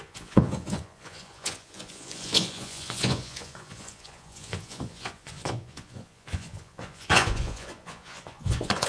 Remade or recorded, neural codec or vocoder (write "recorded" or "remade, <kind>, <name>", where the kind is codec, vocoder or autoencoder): remade, vocoder, Vocos